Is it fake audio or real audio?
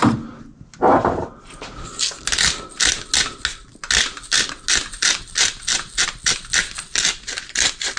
real